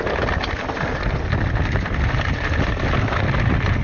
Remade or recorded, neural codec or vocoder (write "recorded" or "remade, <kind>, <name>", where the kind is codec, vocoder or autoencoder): recorded